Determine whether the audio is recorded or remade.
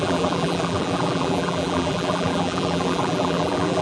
remade